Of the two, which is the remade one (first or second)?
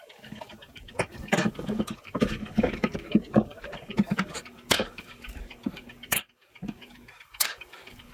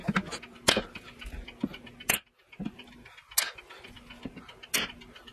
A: first